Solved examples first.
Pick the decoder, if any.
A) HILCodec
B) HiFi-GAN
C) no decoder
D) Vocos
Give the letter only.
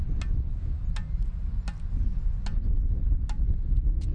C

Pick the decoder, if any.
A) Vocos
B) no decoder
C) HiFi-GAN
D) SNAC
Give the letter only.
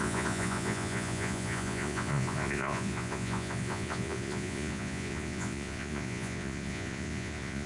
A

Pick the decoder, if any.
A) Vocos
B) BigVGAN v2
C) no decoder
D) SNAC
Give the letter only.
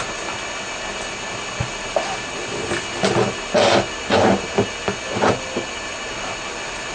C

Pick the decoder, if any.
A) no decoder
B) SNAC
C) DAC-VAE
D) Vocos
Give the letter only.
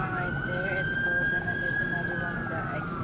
A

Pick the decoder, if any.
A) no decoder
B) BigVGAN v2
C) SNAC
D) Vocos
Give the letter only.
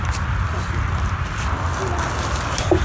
A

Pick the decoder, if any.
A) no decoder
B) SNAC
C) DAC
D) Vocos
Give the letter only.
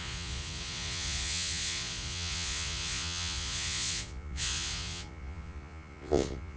D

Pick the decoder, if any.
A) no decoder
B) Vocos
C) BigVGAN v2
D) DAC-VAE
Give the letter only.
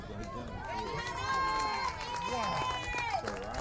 A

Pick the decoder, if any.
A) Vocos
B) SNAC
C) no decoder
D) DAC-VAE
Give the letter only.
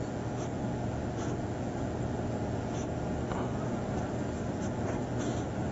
C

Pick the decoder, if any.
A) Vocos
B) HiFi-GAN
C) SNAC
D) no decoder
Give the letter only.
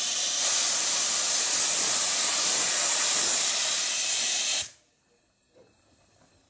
D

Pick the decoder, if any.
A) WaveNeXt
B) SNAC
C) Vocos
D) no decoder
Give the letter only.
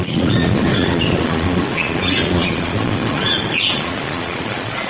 C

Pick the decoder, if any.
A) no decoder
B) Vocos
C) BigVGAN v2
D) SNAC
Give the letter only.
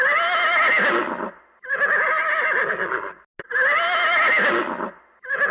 A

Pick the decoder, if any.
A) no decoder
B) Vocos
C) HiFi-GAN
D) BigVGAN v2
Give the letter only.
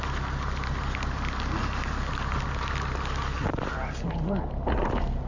A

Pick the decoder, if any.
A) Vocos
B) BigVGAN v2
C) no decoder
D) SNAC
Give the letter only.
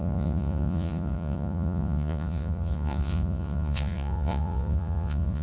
A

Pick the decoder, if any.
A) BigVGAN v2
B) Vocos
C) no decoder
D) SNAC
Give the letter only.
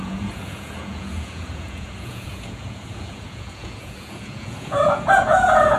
B